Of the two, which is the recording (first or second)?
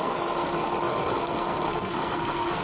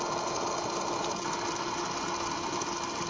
second